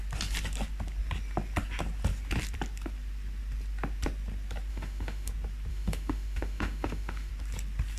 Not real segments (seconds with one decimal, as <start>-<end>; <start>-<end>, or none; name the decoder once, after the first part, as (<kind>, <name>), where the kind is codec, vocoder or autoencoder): 4.7-5.3 (autoencoder, DAC-VAE); 5.7-7.3